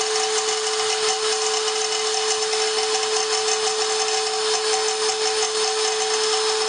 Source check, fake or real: real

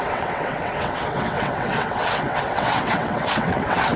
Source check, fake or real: fake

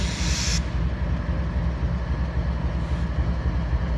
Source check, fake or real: real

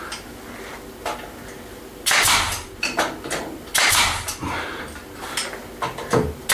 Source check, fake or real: real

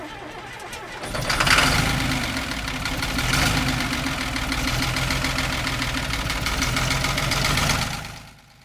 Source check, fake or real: real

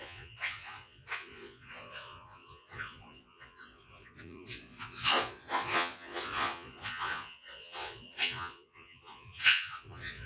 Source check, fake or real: fake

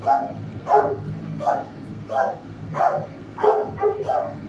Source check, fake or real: fake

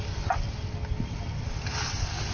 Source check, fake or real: real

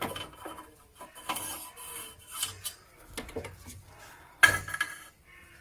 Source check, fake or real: real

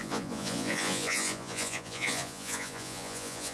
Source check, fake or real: fake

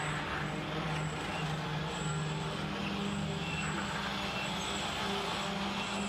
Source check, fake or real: real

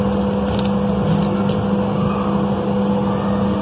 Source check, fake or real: real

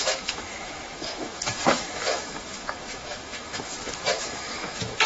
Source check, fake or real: fake